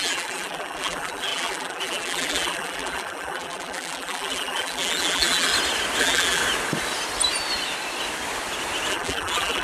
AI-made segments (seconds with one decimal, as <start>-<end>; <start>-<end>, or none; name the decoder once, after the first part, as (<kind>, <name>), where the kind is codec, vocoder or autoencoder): 0.0-5.5 (vocoder, BigVGAN v2); 6.0-6.4; 8.9-9.6